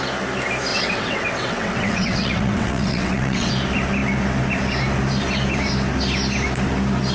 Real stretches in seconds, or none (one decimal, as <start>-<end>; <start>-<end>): 0.0-0.7; 3.5-7.1